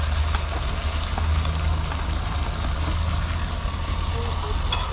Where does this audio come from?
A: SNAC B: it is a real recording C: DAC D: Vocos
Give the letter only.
B